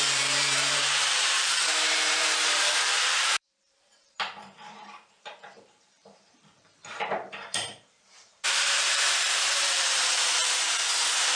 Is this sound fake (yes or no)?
yes